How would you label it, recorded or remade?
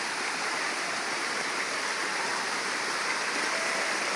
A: remade